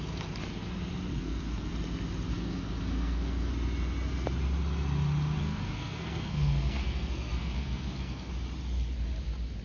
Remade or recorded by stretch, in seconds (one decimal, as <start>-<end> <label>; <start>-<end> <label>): 0.0-1.1 recorded; 1.1-1.7 remade; 1.7-2.3 recorded; 2.3-3.5 remade; 3.5-5.4 recorded; 5.4-8.3 remade; 8.3-9.6 recorded